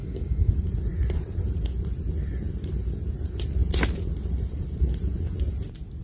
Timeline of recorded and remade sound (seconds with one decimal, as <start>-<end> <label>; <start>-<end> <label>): 0.0-0.5 remade; 0.5-6.0 recorded